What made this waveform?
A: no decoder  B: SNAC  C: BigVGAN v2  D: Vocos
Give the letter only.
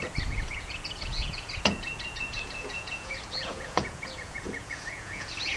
D